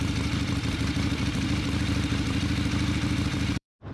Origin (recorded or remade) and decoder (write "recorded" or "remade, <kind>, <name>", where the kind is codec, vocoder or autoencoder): remade, vocoder, BigVGAN v2